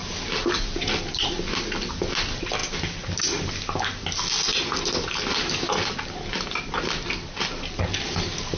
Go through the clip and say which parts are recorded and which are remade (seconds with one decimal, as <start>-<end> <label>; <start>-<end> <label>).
0.0-8.6 recorded